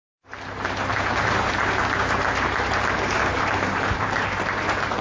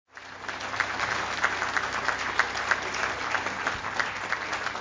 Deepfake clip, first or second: first